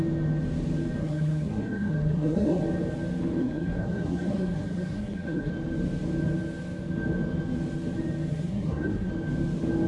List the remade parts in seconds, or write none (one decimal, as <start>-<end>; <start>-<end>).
1.0-2.6; 3.4-5.5; 8.3-9.1